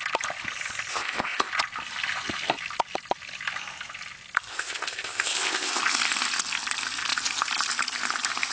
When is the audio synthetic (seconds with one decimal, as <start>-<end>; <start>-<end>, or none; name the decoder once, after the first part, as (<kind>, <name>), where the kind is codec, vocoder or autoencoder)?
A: 0.9-1.5 (codec, ZipCodec); 4.5-5.8